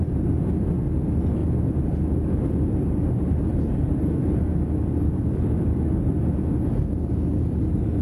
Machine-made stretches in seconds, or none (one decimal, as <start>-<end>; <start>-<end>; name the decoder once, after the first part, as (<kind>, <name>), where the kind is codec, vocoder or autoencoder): 7.3-8.0 (vocoder, BigVGAN v2)